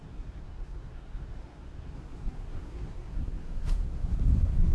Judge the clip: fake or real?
fake